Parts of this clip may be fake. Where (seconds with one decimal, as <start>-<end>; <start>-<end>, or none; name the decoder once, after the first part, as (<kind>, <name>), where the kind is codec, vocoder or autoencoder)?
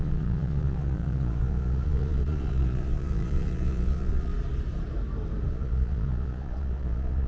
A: 0.0-4.3 (vocoder, Vocos); 5.5-7.3